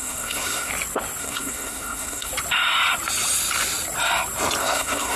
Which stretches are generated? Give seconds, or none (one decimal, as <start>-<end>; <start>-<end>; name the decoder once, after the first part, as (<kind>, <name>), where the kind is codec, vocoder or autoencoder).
0.0-0.7 (codec, SNAC); 1.2-2.3; 4.6-5.2